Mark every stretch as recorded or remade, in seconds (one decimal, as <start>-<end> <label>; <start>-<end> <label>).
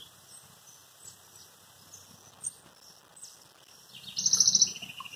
0.0-5.2 recorded